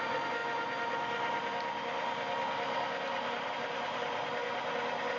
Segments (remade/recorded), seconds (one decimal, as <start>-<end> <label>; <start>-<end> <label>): 0.0-5.2 recorded